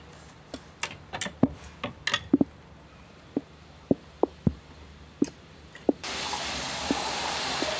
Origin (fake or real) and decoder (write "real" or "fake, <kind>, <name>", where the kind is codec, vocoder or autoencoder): real